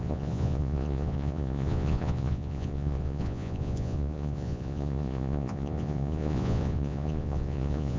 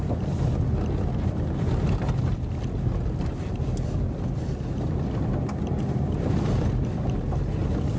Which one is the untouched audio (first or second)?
second